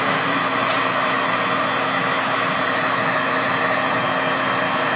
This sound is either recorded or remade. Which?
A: recorded